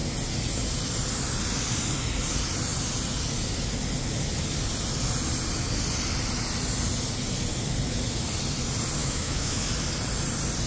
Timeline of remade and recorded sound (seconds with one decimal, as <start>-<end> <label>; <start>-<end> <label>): 0.0-9.0 recorded; 9.0-9.6 remade; 9.6-10.7 recorded